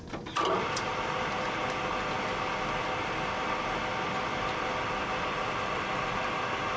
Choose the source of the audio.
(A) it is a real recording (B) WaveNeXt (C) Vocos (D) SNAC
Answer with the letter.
A